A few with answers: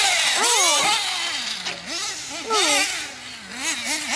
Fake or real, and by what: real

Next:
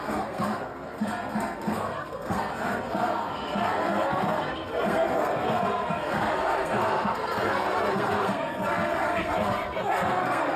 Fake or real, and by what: fake, codec, SNAC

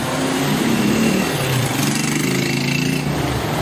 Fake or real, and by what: real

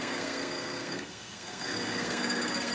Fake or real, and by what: fake, codec, SNAC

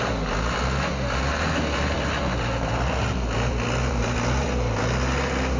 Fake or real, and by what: real